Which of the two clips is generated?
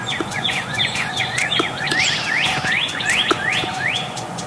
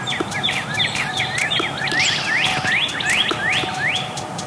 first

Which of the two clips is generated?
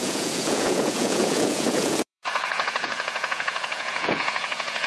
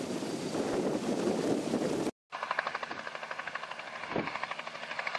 first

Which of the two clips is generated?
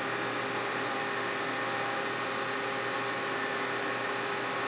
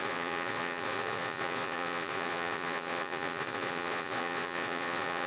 second